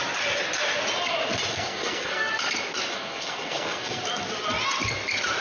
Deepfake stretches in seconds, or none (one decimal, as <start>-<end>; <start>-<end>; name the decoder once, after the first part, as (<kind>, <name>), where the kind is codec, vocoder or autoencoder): 1.5-2.3 (codec, SNAC); 2.9-4.0